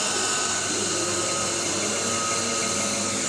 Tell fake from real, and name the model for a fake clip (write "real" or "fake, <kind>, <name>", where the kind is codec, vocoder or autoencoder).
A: real